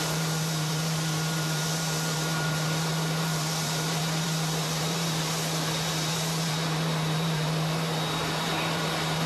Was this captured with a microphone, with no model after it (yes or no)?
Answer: no